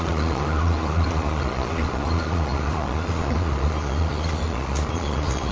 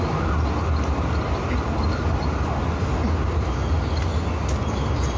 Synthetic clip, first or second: first